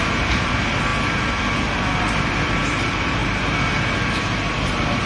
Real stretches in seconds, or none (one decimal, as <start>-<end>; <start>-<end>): 0.9-2.0